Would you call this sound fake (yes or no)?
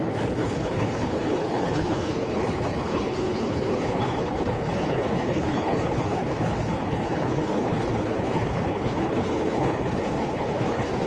yes